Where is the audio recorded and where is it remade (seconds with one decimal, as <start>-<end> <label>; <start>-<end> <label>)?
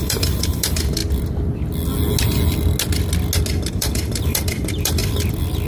0.0-1.0 remade; 1.0-3.7 recorded; 3.7-5.0 remade; 5.0-5.7 recorded